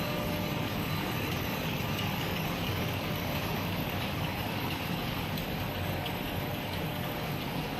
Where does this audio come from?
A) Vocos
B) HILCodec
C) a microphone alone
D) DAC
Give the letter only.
D